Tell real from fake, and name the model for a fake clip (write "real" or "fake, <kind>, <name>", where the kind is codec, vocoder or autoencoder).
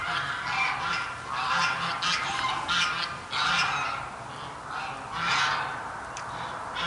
real